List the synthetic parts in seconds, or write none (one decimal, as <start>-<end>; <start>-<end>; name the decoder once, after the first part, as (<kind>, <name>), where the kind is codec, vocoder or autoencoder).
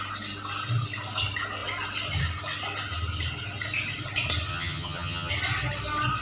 4.5-5.3 (vocoder, HiFi-GAN)